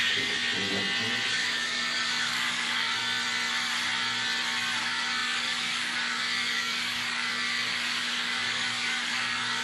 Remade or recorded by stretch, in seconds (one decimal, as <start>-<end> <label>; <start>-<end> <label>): 0.0-0.4 remade; 0.4-1.3 recorded; 1.3-3.0 remade; 3.0-4.8 recorded; 4.8-9.6 remade